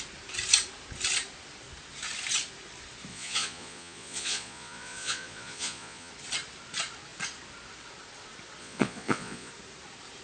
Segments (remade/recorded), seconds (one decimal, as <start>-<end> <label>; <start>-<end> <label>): 0.0-3.1 recorded; 3.1-6.1 remade; 6.1-8.6 recorded; 8.6-9.5 remade; 9.5-10.2 recorded